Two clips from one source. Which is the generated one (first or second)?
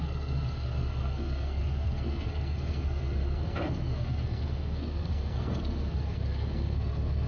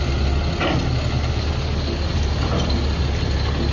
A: first